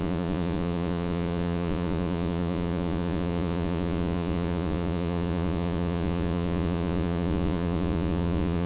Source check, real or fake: fake